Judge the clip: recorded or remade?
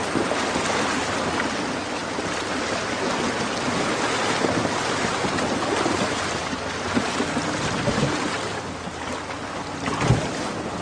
recorded